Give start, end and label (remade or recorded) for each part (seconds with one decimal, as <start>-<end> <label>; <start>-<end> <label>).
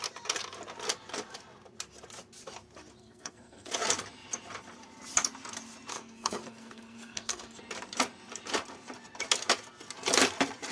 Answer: 0.0-3.0 recorded; 3.0-3.7 remade; 3.7-5.9 recorded; 5.9-7.6 remade; 7.6-10.7 recorded